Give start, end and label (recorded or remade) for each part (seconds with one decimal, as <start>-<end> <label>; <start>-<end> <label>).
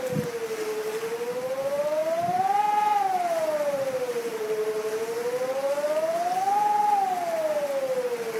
0.0-2.0 recorded; 2.0-5.0 remade; 5.0-8.4 recorded